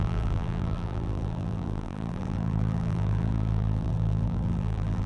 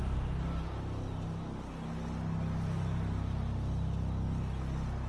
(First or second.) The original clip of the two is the second